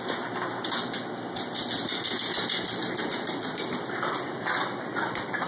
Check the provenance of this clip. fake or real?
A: real